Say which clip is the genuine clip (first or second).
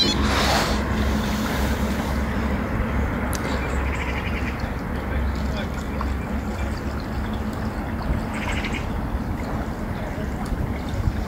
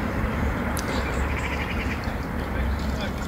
first